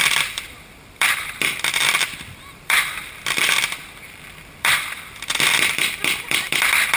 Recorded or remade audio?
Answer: remade